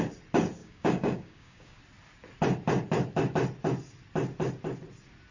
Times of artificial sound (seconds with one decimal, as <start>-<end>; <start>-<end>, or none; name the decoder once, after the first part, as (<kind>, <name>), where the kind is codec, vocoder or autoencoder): 0.6-1.8 (codec, DAC)